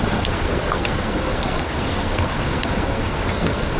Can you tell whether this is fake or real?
fake